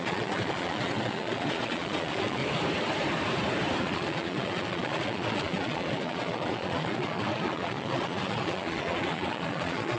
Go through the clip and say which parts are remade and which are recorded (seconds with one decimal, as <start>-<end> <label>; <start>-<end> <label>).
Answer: 0.0-2.4 remade; 2.4-3.8 recorded; 3.8-10.0 remade